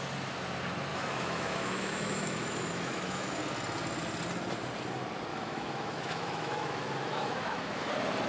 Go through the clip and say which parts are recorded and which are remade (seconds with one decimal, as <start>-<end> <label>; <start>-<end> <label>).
0.0-0.9 recorded; 0.9-3.4 remade; 3.4-5.3 recorded; 5.3-7.9 remade; 7.9-8.3 recorded